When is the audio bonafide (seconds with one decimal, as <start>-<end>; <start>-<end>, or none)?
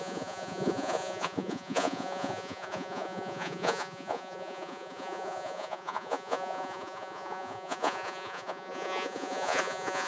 none